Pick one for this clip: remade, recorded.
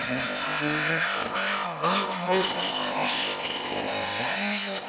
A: remade